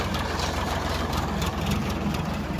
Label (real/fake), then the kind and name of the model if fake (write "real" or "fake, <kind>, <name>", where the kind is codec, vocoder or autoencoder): fake, vocoder, BigVGAN v2